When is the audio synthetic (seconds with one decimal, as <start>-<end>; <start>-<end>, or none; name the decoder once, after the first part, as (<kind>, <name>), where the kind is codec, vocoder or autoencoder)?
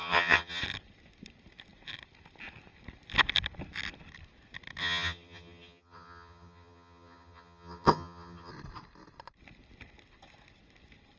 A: 0.0-0.6 (vocoder, HiFi-GAN); 4.8-8.5